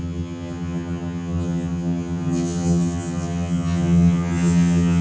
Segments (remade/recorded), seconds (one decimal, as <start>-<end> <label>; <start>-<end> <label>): 0.0-5.0 remade

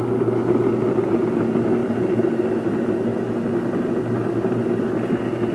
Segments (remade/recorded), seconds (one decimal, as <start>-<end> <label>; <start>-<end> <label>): 0.0-5.5 recorded

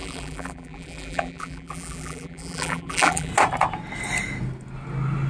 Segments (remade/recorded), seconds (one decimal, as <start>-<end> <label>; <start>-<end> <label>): 0.0-3.3 remade; 3.3-5.3 recorded

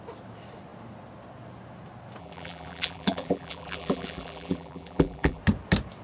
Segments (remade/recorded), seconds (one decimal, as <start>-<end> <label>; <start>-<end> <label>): 0.0-2.2 recorded; 2.2-5.4 remade; 5.4-6.0 recorded

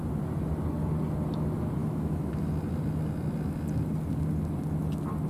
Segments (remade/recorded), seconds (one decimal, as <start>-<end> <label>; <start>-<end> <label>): 0.0-1.8 recorded; 1.8-2.5 remade; 2.5-5.3 recorded

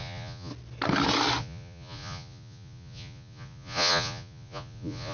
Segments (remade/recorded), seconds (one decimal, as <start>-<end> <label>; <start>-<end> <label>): 0.0-0.5 remade; 0.5-1.4 recorded; 1.4-5.1 remade